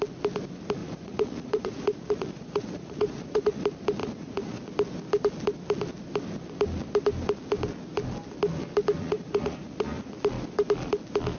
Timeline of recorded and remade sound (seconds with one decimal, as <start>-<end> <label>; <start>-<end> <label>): 0.0-0.8 recorded; 0.8-3.6 remade; 3.6-4.0 recorded; 4.0-4.6 remade; 4.6-9.0 recorded; 9.0-10.1 remade; 10.1-11.4 recorded